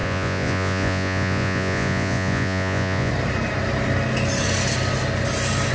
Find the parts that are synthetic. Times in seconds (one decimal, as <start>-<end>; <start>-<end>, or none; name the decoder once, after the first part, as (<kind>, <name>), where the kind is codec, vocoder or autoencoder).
0.0-3.1 (vocoder, Vocos)